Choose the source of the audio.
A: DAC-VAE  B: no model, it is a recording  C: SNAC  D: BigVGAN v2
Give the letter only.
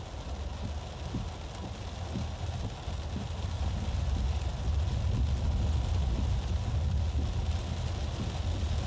B